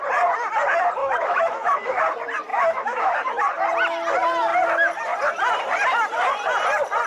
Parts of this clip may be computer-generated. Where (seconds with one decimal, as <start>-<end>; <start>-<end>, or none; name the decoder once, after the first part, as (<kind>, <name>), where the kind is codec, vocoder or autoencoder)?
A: 1.0-2.0 (autoencoder, DAC-VAE); 2.5-3.1